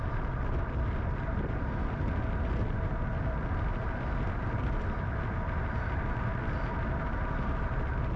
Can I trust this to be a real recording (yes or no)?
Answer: yes